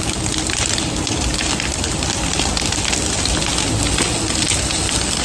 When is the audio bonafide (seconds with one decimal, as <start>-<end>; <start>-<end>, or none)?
0.0-5.2